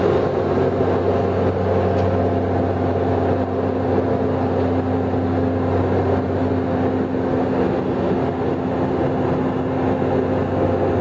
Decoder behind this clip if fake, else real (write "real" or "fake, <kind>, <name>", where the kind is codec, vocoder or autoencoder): real